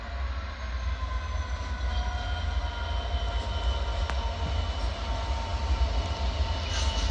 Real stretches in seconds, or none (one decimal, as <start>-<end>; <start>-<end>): 0.0-7.1